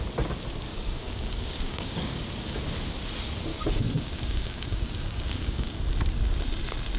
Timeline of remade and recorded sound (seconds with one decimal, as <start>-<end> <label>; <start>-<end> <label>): 0.0-0.7 recorded; 0.7-2.2 remade; 2.2-3.5 recorded; 3.5-5.8 remade; 5.8-7.0 recorded